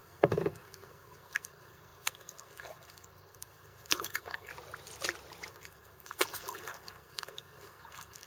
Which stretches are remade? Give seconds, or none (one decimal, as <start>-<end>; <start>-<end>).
0.0-4.5; 5.5-8.3